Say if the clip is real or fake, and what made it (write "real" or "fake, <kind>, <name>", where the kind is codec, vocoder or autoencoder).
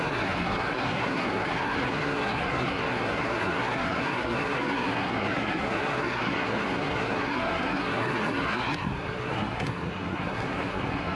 fake, codec, SNAC